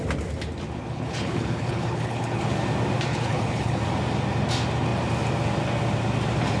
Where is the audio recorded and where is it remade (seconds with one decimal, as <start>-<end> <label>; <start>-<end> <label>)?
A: 0.0-0.8 recorded; 0.8-2.4 remade; 2.4-3.1 recorded; 3.1-3.8 remade; 3.8-6.6 recorded